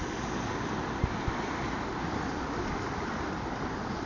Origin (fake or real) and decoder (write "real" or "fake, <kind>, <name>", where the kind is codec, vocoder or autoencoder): real